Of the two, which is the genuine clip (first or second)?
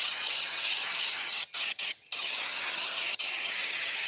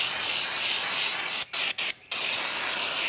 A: second